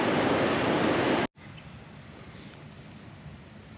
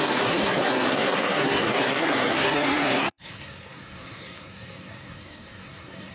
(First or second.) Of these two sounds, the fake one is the second